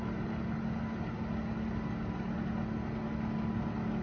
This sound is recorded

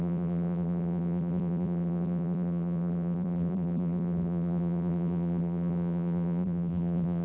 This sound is remade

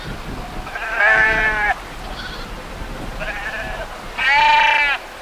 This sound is recorded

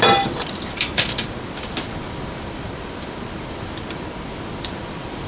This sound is remade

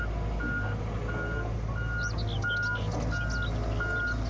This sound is recorded